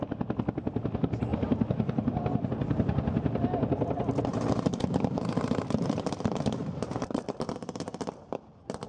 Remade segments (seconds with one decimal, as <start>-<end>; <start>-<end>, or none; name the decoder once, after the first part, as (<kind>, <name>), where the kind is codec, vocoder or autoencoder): 1.3-2.5 (vocoder, BigVGAN v2); 4.3-5.6; 6.6-7.8